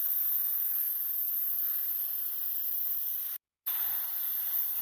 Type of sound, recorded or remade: recorded